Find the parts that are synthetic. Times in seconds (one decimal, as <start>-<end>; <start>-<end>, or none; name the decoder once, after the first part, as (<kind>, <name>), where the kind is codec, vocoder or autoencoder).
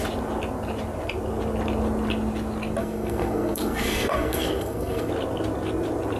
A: 2.8-5.1 (codec, SNAC)